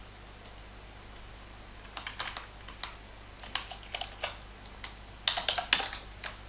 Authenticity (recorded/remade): recorded